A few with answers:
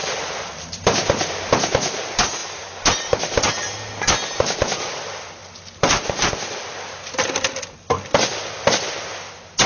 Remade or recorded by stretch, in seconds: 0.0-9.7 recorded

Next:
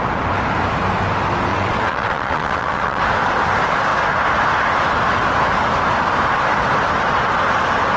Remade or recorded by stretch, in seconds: 0.0-1.5 recorded; 1.5-3.0 remade; 3.0-8.0 recorded

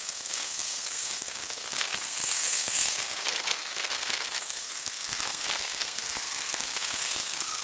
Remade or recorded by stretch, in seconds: 0.0-7.6 remade

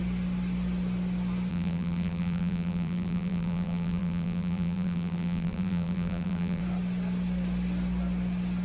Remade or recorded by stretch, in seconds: 0.0-1.5 recorded; 1.5-6.6 remade; 6.6-8.6 recorded

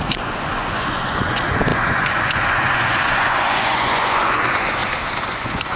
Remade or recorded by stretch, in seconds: 0.0-4.8 remade; 4.8-5.3 recorded; 5.3-5.8 remade